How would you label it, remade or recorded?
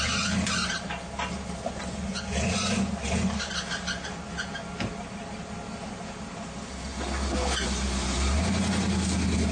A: recorded